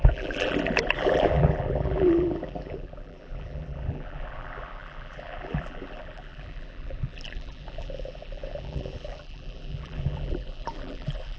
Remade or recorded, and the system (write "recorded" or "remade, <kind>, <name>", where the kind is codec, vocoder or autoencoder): remade, vocoder, BigVGAN v2